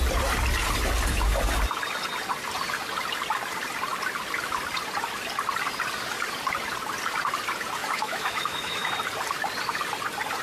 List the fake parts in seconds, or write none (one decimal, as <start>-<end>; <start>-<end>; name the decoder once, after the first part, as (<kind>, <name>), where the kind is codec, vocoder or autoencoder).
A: 7.8-8.9 (autoencoder, DAC-VAE)